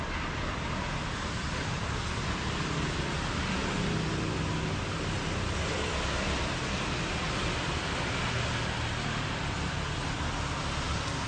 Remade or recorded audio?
recorded